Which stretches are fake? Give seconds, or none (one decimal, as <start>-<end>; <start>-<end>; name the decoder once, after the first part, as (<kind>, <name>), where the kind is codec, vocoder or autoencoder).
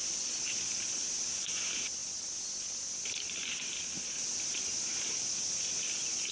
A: none